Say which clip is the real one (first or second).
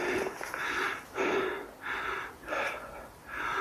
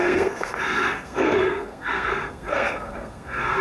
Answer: first